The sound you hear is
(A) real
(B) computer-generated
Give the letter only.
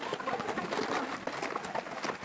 A